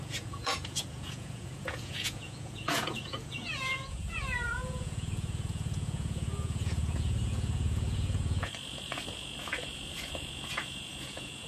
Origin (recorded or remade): remade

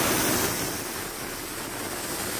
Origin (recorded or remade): recorded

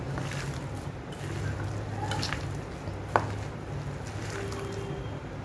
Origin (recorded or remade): recorded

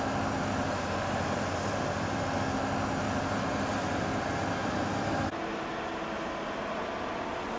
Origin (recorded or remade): recorded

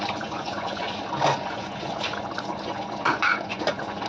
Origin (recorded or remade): remade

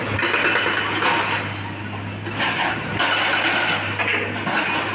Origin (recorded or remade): recorded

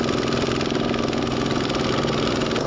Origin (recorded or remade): recorded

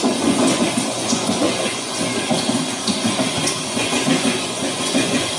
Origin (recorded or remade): remade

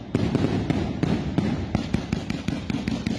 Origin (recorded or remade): recorded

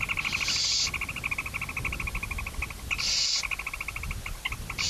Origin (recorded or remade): recorded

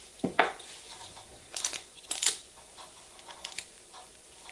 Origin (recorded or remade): remade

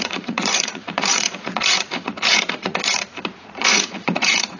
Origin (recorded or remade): remade